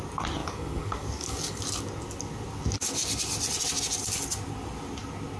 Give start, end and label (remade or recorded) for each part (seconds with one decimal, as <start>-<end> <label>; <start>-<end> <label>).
0.0-0.4 recorded; 0.4-1.6 remade; 1.6-5.4 recorded